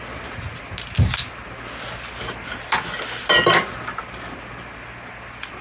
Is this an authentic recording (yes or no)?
yes